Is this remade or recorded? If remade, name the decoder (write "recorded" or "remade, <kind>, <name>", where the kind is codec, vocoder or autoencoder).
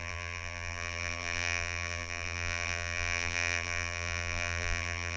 remade, vocoder, BigVGAN v2